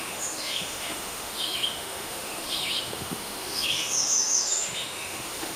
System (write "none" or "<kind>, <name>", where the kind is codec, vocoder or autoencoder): autoencoder, DAC-VAE